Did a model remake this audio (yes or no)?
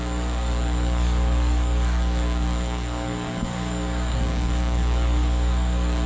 yes